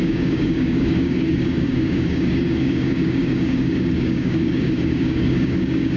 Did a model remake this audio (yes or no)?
yes